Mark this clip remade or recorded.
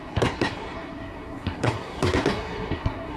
remade